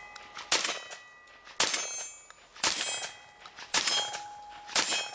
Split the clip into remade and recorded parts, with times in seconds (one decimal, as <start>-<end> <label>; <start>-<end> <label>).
0.0-2.5 recorded; 2.5-5.1 remade